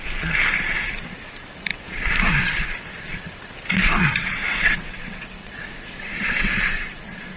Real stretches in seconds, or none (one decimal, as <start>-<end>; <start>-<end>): 0.0-4.2